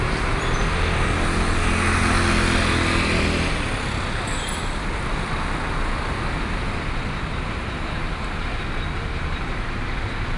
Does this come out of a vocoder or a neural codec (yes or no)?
no